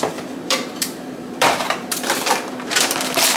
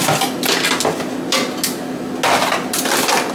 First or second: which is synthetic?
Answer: first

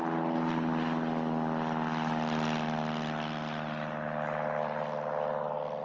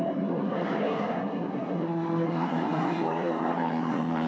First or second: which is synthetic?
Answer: second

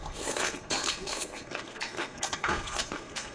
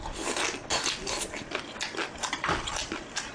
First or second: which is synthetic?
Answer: first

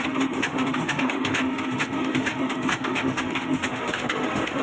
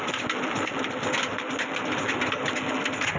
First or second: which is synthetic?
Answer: first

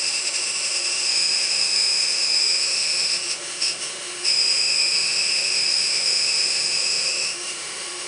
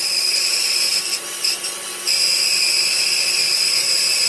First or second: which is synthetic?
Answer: first